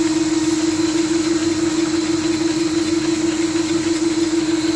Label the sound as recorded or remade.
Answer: recorded